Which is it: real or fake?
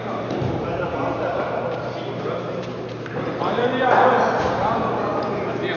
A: fake